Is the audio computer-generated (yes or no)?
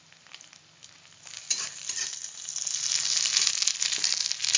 no